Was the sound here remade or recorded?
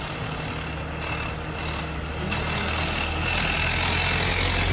recorded